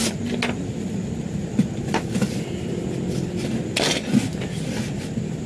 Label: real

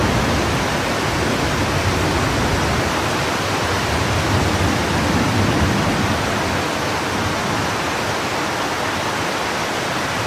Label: real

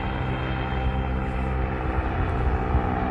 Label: real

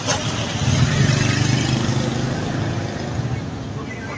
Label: real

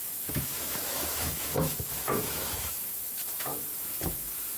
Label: fake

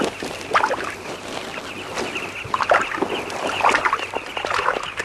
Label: real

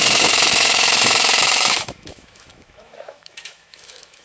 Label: fake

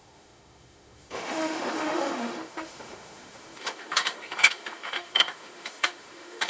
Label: fake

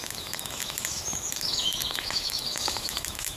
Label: fake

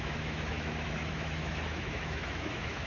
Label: fake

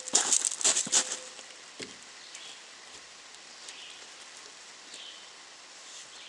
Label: real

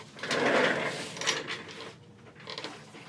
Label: real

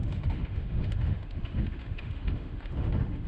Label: fake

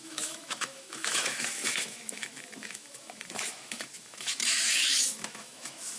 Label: fake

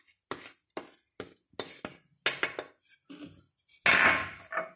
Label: real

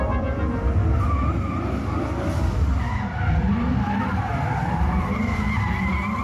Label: real